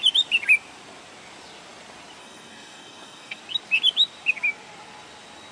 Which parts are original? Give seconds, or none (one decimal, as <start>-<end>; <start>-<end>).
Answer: 0.0-2.2; 3.4-5.5